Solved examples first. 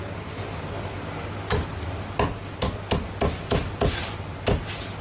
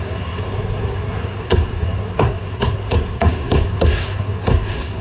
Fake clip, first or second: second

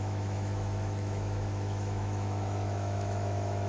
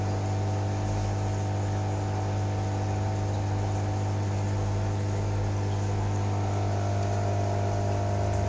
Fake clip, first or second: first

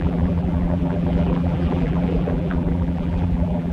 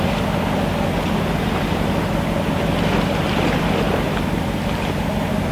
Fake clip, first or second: first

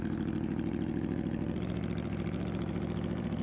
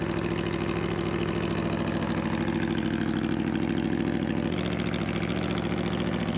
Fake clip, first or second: first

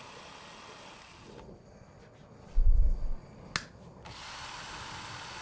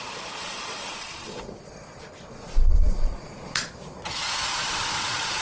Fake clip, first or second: second